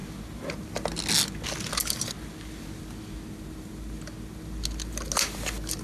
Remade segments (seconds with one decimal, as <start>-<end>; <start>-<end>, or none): none